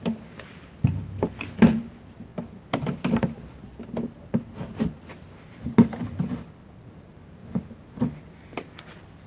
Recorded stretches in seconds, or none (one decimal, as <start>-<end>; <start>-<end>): 0.0-9.3